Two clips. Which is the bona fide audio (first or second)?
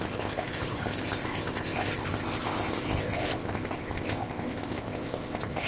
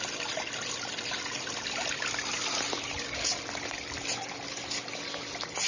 second